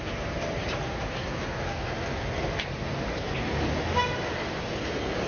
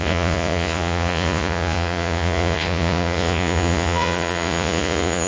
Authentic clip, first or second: first